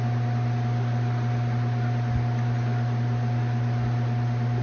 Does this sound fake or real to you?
real